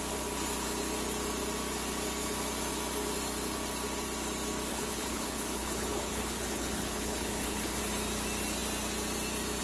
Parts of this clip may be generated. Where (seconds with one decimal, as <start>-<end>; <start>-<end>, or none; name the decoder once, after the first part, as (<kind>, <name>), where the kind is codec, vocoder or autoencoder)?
4.7-7.8 (codec, HILCodec)